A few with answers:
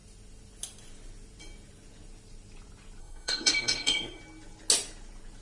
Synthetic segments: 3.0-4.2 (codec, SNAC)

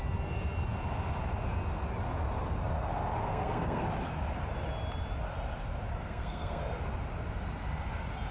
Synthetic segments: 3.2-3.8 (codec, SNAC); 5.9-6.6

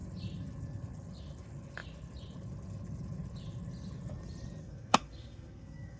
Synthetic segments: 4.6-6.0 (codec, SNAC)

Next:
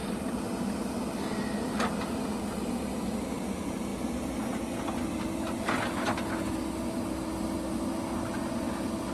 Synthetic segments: none

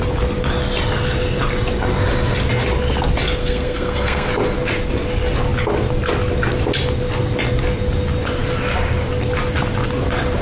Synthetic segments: 3.4-4.3 (codec, SNAC)